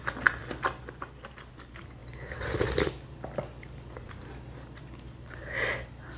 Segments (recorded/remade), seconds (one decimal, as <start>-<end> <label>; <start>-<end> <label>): 0.0-6.2 recorded